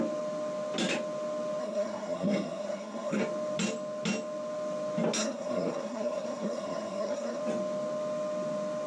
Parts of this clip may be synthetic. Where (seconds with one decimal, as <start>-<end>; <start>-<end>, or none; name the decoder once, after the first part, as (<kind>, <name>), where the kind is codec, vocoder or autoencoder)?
1.6-3.2 (codec, SNAC); 5.2-7.4